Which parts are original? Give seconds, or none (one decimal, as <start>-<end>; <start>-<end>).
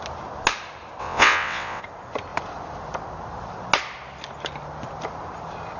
0.0-1.0; 1.8-5.8